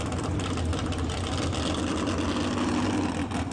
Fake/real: real